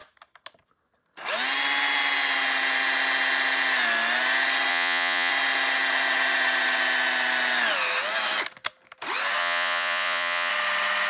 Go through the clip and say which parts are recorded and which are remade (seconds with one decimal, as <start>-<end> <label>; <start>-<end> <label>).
0.0-4.7 recorded; 4.7-5.3 remade; 5.3-9.4 recorded; 9.4-10.5 remade; 10.5-11.1 recorded